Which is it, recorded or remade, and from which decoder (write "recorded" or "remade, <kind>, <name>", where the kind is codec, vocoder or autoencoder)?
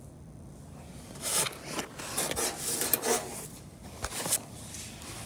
recorded